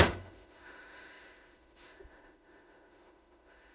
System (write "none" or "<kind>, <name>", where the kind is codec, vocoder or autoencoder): autoencoder, DAC-VAE